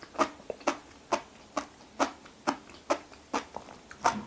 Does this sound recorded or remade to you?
recorded